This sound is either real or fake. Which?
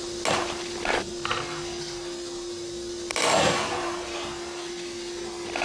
real